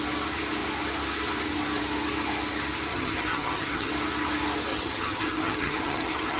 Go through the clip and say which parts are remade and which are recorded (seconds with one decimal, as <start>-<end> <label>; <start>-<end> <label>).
0.0-2.9 recorded; 2.9-3.9 remade; 3.9-4.7 recorded; 4.7-6.4 remade